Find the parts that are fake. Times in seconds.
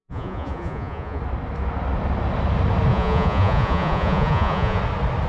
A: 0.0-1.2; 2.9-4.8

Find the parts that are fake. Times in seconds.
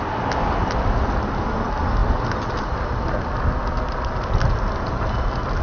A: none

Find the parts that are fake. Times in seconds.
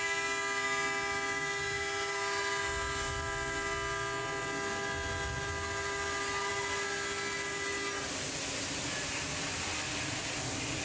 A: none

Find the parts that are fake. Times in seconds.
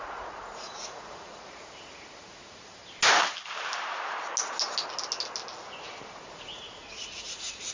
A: 0.0-2.8; 6.3-7.7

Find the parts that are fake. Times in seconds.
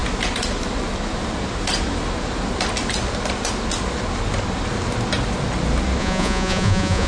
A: 6.0-7.1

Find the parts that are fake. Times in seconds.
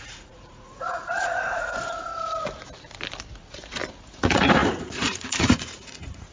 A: 0.0-2.1; 4.0-6.3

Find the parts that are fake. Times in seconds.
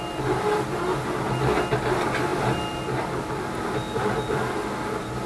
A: none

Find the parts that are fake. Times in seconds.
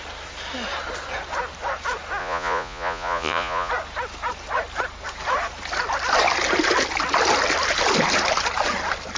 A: 2.2-3.7